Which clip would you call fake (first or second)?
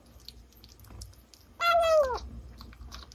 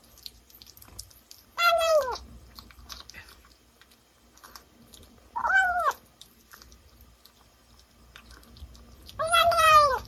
second